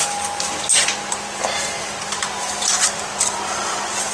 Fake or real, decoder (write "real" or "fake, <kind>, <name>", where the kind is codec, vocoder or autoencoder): real